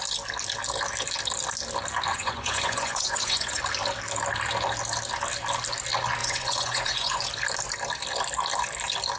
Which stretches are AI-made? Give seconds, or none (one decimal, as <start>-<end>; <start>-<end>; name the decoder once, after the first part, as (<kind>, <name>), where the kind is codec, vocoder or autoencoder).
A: 2.1-3.6 (vocoder, Vocos); 6.2-7.2